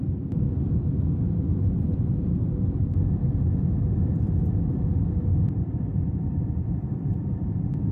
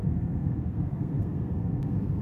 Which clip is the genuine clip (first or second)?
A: first